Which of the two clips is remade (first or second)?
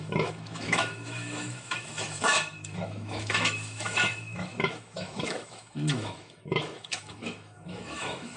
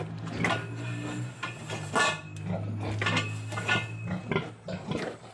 first